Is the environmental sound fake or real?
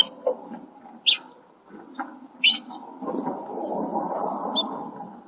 real